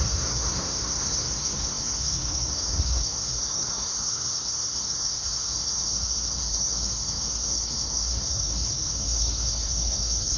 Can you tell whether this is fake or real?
fake